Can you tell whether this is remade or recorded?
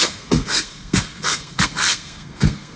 remade